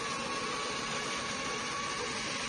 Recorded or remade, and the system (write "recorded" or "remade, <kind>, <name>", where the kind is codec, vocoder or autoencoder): recorded